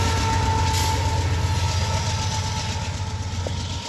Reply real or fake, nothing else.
real